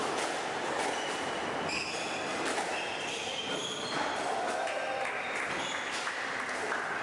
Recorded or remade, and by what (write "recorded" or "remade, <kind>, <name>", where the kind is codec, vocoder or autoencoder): recorded